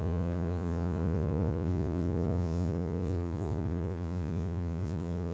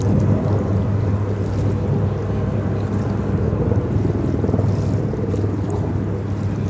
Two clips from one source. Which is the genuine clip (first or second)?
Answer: second